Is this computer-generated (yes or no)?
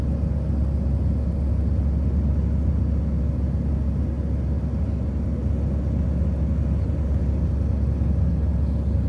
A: no